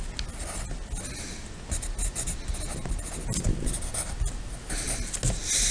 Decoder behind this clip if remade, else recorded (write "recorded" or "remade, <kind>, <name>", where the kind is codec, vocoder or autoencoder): recorded